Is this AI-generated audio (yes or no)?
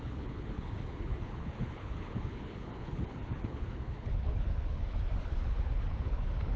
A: yes